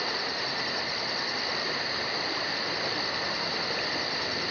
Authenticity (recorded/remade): recorded